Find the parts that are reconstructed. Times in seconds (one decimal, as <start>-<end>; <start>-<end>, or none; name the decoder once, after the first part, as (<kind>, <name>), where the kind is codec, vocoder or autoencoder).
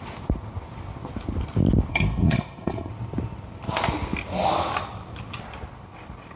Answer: 1.9-2.9 (codec, SNAC)